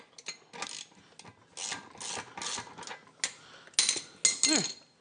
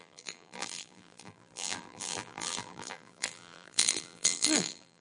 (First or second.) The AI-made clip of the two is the second